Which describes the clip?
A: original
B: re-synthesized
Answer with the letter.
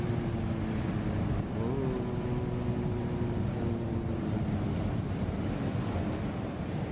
A